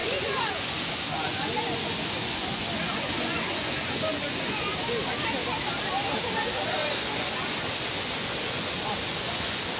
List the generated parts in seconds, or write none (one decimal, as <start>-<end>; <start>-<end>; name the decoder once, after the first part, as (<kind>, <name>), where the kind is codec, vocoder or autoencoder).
0.0-4.6 (vocoder, Vocos); 6.8-9.8